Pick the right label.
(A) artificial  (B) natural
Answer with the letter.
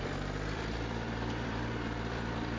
A